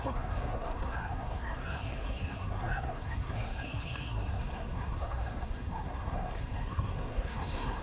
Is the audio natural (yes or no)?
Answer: no